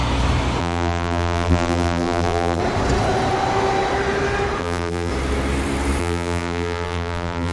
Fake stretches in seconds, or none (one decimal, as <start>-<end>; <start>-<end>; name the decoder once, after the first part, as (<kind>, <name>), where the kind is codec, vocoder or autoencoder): 0.6-2.6 (vocoder, BigVGAN v2); 4.6-5.1; 6.0-7.5